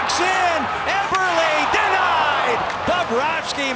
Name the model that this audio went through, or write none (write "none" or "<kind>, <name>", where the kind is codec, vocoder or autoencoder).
none